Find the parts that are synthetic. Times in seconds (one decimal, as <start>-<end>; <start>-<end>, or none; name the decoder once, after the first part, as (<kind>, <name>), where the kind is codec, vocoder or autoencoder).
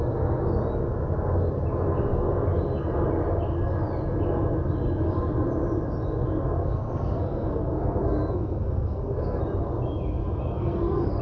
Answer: 6.6-9.4 (codec, SNAC); 10.4-11.2